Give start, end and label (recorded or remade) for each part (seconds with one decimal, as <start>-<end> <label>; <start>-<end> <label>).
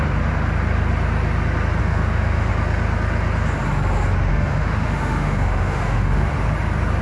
0.0-1.8 recorded; 1.8-2.5 remade; 2.5-4.3 recorded; 4.3-6.3 remade; 6.3-7.0 recorded